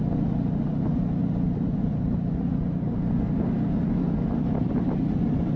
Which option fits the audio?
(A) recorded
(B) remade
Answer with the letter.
A